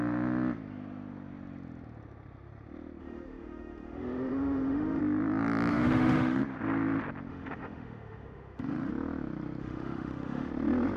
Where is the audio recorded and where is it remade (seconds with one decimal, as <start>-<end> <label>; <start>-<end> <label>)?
0.0-3.0 recorded; 3.0-5.0 remade; 5.0-5.7 recorded; 5.7-6.4 remade; 6.4-7.3 recorded; 7.3-8.9 remade; 8.9-9.6 recorded; 9.6-10.5 remade; 10.5-11.0 recorded